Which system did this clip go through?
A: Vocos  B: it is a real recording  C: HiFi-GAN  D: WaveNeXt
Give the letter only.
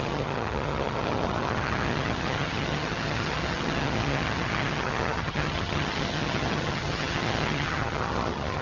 C